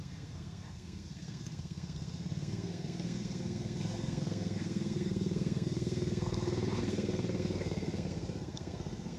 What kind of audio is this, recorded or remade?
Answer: remade